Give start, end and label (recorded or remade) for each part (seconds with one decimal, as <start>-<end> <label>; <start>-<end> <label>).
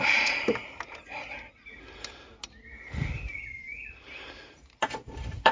0.0-0.6 remade; 0.6-3.9 recorded; 3.9-5.5 remade